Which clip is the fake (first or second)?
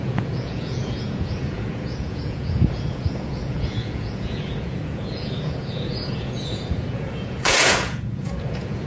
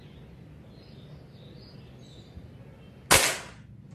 first